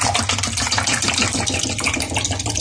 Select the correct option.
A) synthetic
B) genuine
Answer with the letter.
B